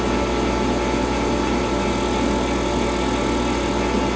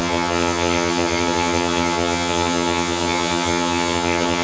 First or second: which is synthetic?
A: second